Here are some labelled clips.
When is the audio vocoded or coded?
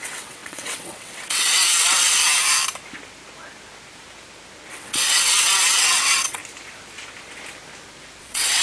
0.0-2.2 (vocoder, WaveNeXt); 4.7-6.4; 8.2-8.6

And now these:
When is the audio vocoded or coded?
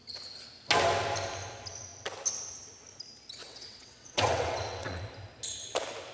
3.4-5.0 (vocoder, WaveNeXt)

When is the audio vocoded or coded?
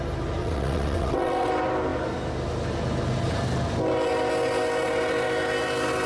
0.4-1.5 (vocoder, WaveNeXt)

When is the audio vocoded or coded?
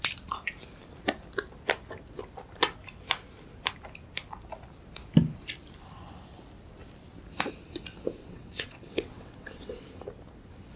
8.2-10.0 (vocoder, WaveNeXt)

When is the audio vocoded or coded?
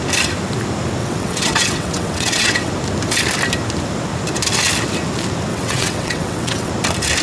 1.0-2.7 (vocoder, WaveNeXt); 5.5-6.7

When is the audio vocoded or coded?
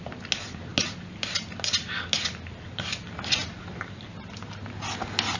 none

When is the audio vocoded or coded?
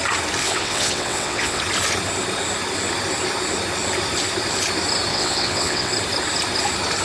0.4-1.6 (vocoder, WaveNeXt); 5.1-5.9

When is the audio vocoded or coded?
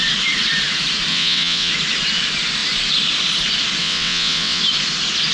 1.1-1.7 (vocoder, WaveNeXt); 3.8-4.6